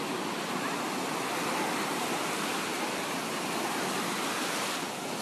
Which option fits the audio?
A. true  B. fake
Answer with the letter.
A